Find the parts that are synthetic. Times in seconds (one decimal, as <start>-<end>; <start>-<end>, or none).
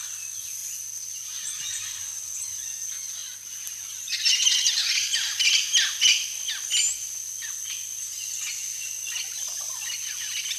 none